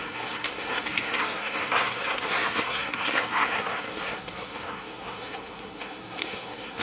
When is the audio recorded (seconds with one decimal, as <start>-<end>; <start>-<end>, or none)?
none